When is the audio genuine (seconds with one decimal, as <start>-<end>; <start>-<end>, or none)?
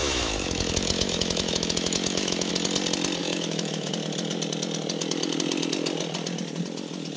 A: 2.5-3.2; 3.9-7.2